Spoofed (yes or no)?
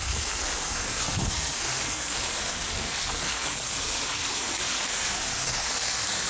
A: yes